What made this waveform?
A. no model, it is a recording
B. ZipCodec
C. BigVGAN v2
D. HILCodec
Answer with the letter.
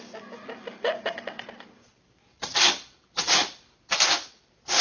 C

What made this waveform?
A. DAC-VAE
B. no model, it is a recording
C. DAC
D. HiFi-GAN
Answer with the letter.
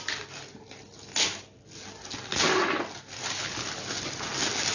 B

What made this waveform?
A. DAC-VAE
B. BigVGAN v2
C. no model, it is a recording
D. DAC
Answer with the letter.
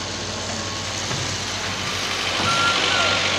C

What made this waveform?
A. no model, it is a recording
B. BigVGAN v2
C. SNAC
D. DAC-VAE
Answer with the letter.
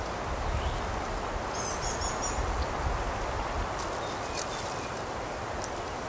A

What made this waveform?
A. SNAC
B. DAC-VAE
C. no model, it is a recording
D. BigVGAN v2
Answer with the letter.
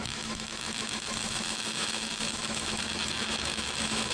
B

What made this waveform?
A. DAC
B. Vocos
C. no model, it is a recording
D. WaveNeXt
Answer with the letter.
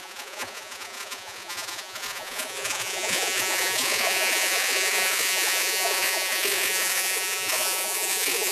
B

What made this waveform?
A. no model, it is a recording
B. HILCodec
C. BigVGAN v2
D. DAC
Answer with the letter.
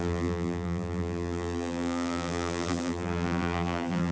C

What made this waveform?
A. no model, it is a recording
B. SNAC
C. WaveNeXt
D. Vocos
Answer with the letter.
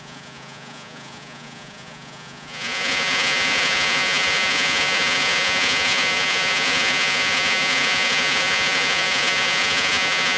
D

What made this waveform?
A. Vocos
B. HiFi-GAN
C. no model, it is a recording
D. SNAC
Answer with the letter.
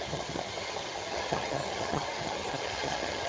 B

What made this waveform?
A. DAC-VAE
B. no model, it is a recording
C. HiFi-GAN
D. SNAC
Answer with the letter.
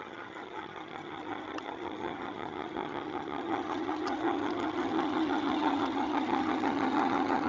C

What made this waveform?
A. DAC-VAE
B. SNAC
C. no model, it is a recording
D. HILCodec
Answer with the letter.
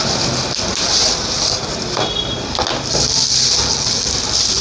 C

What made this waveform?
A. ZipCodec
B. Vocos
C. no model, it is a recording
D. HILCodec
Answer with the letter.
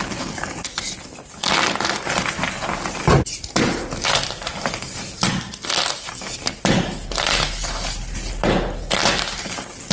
C